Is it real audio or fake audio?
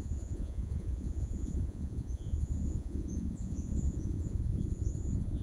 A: fake